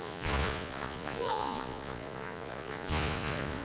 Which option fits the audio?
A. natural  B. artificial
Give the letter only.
B